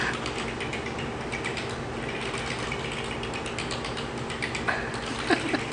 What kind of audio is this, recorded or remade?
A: recorded